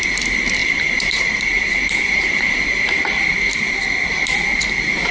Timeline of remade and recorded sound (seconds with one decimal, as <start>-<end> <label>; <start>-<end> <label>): 0.0-0.6 recorded; 0.6-3.2 remade; 3.2-5.1 recorded